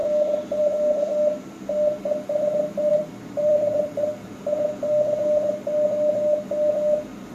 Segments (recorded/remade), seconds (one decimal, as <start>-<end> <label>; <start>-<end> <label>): 0.0-0.6 recorded; 0.6-1.1 remade; 1.1-2.9 recorded; 2.9-4.1 remade; 4.1-7.3 recorded